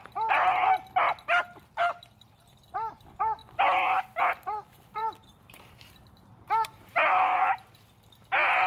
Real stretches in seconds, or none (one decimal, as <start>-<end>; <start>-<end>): 0.0-5.0; 7.5-8.7